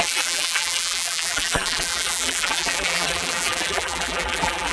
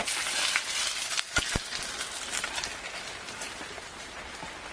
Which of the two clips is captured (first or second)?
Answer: second